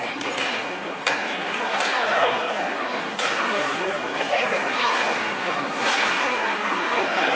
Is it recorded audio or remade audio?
remade